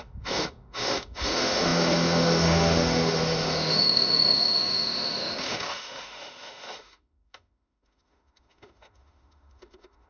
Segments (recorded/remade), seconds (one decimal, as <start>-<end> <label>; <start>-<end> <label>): 0.0-10.1 remade